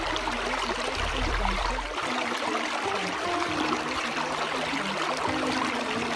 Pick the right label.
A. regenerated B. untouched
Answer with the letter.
A